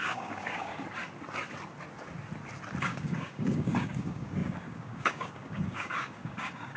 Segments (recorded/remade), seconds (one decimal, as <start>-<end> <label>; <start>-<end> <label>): 0.0-0.7 remade; 0.7-2.8 recorded; 2.8-6.8 remade